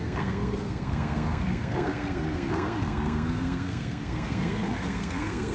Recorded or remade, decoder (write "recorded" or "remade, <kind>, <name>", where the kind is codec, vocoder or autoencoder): remade, codec, SNAC